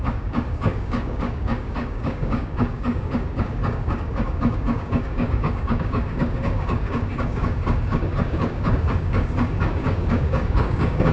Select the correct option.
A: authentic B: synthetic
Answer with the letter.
B